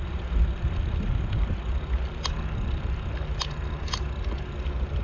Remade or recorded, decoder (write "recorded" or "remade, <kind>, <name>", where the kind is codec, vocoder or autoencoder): recorded